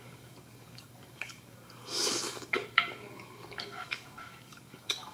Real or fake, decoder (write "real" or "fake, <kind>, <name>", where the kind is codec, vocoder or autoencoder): fake, codec, DAC